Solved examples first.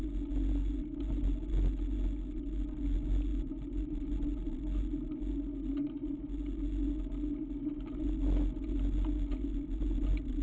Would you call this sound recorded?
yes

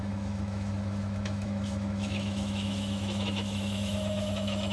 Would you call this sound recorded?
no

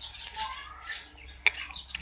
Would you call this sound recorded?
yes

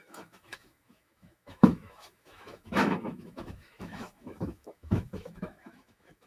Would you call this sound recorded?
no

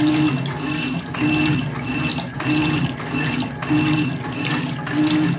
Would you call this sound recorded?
yes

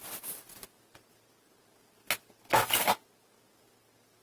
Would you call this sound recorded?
yes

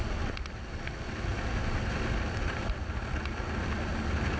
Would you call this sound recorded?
yes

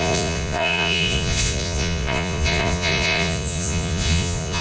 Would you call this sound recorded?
no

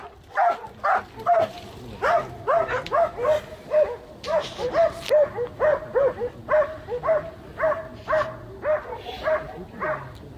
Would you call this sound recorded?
yes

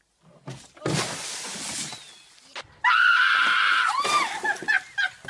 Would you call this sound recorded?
yes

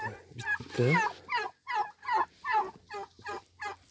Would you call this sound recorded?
yes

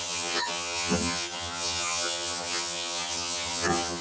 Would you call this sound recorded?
no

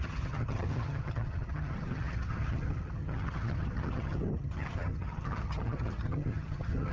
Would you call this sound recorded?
no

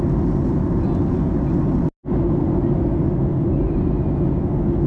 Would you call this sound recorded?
yes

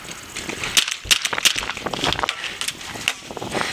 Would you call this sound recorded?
yes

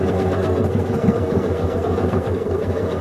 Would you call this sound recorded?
no